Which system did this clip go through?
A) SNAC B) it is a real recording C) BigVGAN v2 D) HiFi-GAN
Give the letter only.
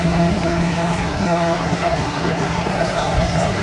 A